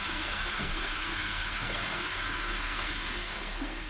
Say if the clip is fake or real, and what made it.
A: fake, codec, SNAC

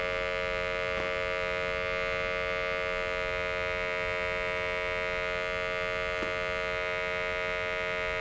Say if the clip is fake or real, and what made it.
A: real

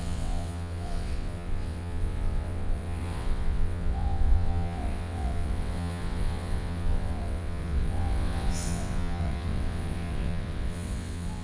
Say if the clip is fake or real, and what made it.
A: fake, vocoder, WaveNeXt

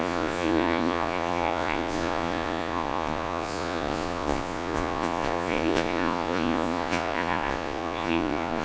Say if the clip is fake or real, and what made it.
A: fake, vocoder, Vocos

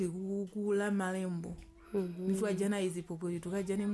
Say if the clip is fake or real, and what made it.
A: real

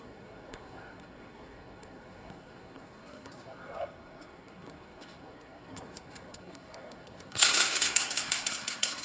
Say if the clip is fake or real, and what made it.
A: fake, codec, SNAC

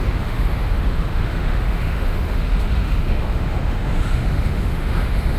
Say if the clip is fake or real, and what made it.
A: fake, autoencoder, DAC-VAE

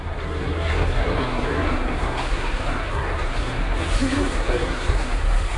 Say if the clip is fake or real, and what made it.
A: fake, codec, SNAC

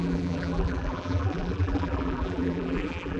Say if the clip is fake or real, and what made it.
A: fake, vocoder, BigVGAN v2